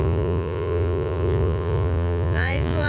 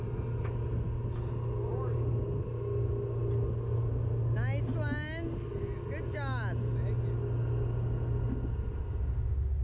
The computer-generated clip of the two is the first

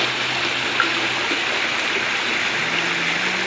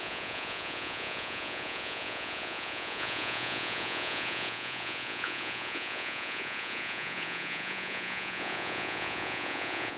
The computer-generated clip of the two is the second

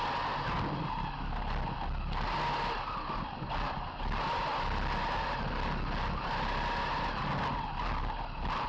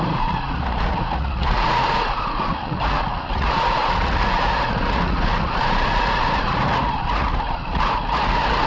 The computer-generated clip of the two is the second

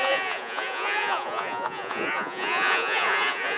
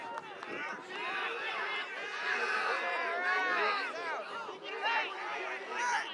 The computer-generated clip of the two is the first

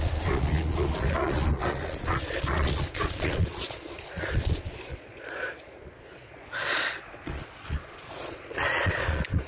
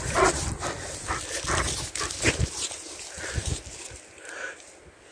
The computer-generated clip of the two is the first